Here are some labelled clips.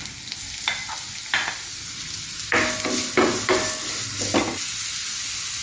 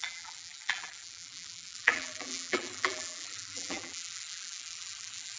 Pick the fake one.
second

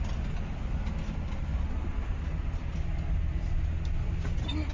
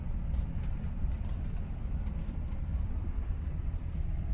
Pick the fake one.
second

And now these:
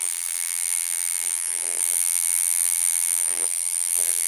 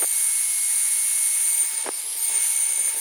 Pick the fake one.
first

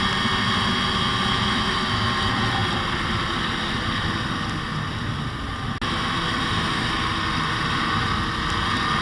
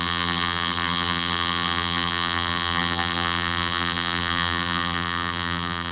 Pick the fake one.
second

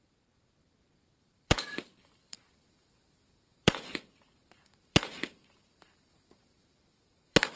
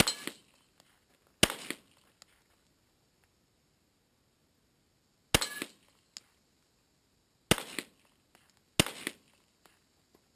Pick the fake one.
first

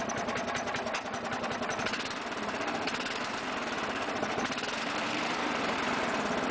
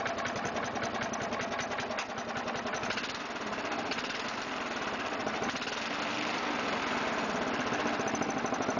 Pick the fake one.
first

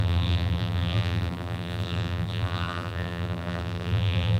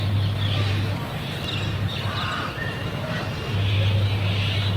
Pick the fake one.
first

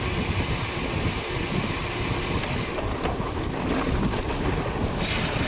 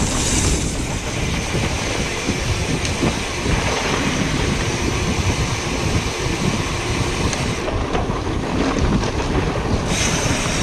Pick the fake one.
second